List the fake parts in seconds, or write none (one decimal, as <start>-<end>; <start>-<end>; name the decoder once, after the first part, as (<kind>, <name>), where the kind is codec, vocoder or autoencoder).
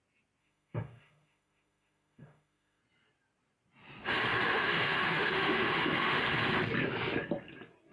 0.4-2.8 (autoencoder, DAC-VAE); 4.5-6.2